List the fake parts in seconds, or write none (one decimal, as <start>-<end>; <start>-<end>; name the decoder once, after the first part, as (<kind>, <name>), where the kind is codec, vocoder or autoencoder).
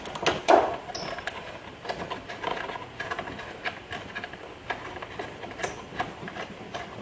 2.5-3.0 (vocoder, Vocos)